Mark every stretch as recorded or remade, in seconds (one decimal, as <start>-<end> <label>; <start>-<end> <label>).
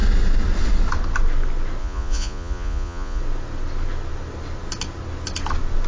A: 0.0-1.8 recorded; 1.8-3.2 remade; 3.2-5.9 recorded